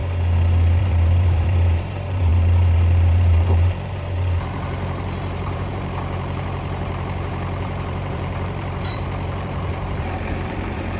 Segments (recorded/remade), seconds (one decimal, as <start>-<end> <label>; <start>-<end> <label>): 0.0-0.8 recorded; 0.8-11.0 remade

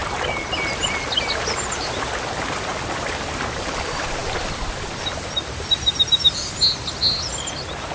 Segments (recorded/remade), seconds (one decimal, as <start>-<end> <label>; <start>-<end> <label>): 0.0-7.9 recorded

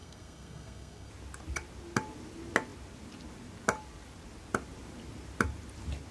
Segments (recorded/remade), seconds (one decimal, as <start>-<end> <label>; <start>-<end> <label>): 0.0-1.1 remade; 1.1-6.1 recorded

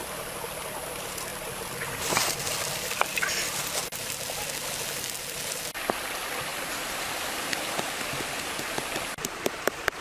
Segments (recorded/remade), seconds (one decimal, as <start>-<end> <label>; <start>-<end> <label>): 0.0-1.3 recorded; 1.3-2.5 remade; 2.5-10.0 recorded

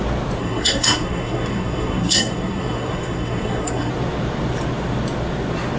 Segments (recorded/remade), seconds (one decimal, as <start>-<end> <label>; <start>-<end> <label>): 0.0-0.4 recorded; 0.4-3.9 remade; 3.9-5.8 recorded